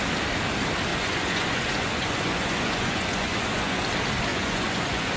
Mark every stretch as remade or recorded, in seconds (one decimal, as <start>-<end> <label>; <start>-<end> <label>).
0.0-0.9 recorded; 0.9-3.8 remade; 3.8-4.3 recorded; 4.3-5.2 remade